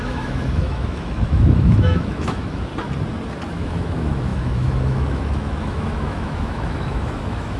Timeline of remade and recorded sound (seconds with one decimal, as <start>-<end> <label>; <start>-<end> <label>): 0.0-2.7 remade; 2.7-3.5 recorded; 3.5-7.6 remade